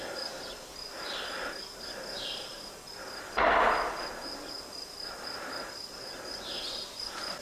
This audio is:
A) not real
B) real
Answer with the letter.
B